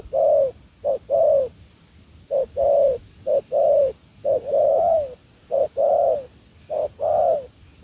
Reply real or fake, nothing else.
real